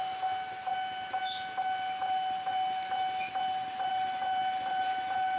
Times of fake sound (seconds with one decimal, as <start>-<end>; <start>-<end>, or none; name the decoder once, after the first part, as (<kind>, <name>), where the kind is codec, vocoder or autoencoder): none